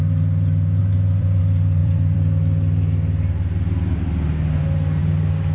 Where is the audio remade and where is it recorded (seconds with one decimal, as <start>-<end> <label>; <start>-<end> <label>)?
0.0-0.8 recorded; 0.8-1.4 remade; 1.4-1.8 recorded; 1.8-5.0 remade; 5.0-5.5 recorded